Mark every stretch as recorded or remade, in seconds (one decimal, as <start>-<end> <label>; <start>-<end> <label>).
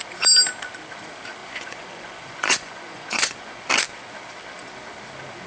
0.0-1.4 recorded; 1.4-3.6 remade; 3.6-5.5 recorded